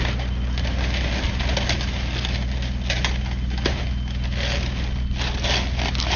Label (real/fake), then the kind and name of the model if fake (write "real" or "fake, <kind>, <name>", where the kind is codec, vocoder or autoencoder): real